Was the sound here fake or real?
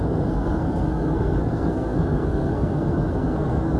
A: fake